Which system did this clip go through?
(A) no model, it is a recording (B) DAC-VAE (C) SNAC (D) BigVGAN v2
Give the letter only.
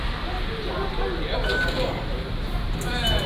A